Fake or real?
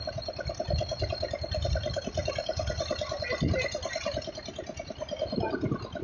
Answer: real